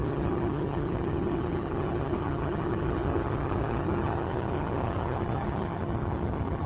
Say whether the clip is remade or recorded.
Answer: remade